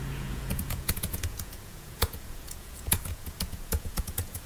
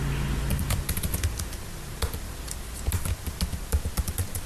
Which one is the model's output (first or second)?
first